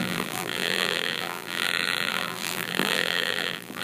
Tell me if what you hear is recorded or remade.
remade